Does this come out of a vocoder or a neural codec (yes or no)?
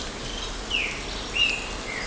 no